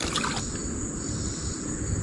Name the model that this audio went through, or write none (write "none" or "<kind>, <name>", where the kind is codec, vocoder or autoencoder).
none